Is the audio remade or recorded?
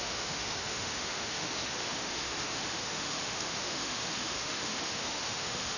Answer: remade